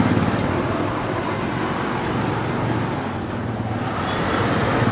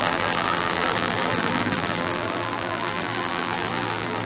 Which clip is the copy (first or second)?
second